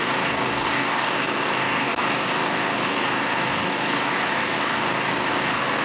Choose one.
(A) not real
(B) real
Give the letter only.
A